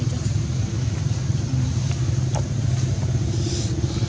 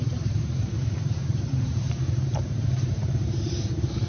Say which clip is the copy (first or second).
second